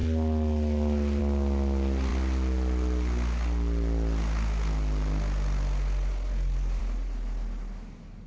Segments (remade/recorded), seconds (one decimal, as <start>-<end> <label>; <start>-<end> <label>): 0.0-8.3 recorded